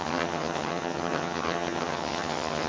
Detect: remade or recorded remade